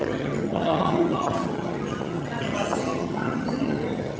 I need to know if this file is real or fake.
fake